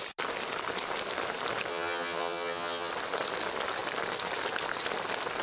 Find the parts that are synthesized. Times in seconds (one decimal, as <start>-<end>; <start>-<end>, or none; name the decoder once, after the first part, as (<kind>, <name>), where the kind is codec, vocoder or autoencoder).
1.7-2.9 (vocoder, HiFi-GAN)